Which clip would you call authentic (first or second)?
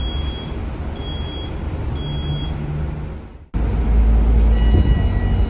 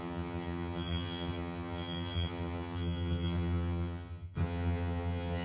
first